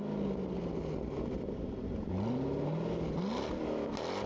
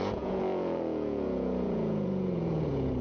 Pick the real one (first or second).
first